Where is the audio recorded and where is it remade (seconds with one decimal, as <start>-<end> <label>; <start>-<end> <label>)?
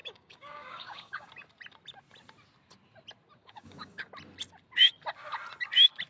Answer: 0.0-1.3 remade; 1.3-3.4 recorded; 3.4-4.1 remade; 4.1-6.1 recorded